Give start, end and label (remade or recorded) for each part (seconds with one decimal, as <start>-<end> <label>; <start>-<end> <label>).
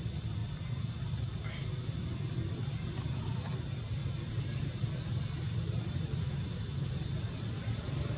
0.0-6.2 recorded; 6.2-6.9 remade; 6.9-8.2 recorded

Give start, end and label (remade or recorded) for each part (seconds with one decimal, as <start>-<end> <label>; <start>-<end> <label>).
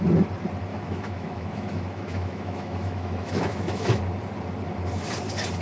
0.0-0.7 recorded; 0.7-4.0 remade; 4.0-5.6 recorded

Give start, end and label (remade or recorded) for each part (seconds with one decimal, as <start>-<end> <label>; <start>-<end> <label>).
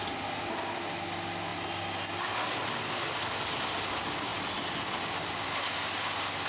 0.0-6.5 recorded